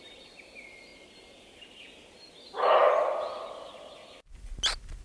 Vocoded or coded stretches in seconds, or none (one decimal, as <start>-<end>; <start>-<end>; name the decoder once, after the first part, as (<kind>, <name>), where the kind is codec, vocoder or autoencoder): none